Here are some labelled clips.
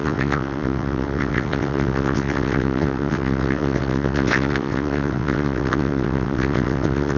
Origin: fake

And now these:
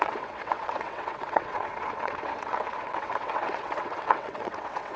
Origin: fake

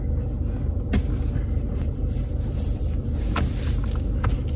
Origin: real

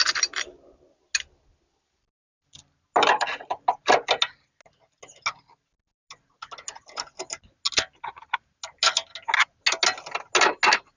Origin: real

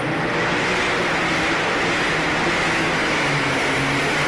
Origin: real